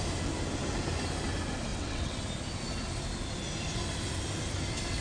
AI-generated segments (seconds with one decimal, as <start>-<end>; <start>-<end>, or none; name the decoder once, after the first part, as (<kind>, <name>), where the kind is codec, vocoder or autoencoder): 1.7-2.2 (vocoder, WaveNeXt)